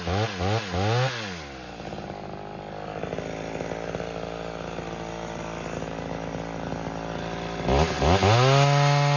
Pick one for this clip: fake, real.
real